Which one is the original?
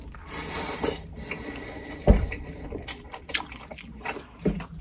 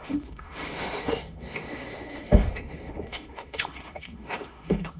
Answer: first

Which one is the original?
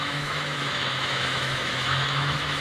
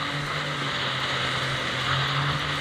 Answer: second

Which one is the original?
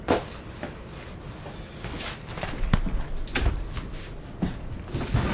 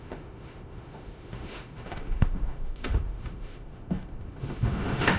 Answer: first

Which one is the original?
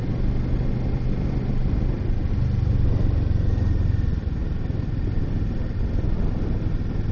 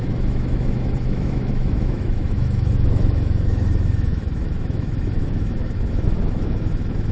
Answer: first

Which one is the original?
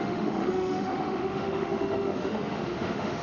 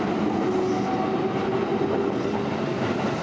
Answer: second